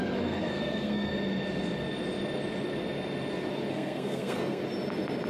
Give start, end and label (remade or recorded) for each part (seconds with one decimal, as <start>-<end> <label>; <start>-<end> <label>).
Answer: 0.0-1.1 remade; 1.1-3.7 recorded; 3.7-4.6 remade; 4.6-5.3 recorded